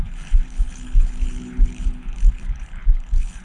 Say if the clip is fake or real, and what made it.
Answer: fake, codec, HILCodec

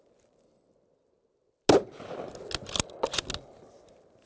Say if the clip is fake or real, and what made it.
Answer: real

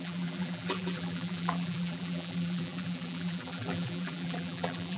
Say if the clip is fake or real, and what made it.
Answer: fake, vocoder, BigVGAN v2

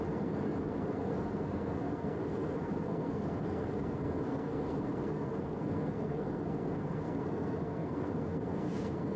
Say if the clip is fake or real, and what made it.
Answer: fake, codec, SNAC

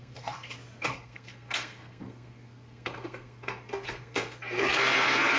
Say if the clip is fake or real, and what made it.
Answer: fake, codec, SNAC